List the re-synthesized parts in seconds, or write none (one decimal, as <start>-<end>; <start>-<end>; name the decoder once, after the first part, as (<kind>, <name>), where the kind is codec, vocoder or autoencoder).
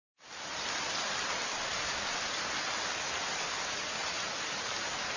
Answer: 4.0-4.6 (vocoder, BigVGAN v2)